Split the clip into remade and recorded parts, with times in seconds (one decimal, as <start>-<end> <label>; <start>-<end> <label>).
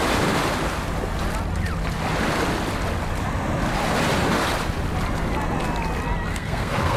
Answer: 0.0-6.3 recorded; 6.3-7.0 remade